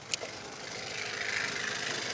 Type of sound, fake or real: real